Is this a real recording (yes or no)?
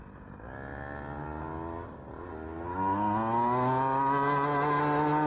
yes